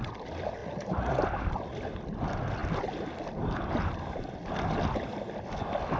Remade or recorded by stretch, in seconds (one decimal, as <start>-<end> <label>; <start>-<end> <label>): 0.0-0.6 recorded; 0.6-1.2 remade; 1.2-6.0 recorded